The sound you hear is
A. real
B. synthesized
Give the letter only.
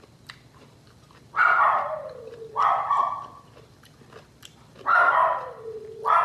A